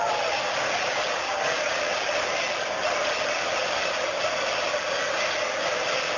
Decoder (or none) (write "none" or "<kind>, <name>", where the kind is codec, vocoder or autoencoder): none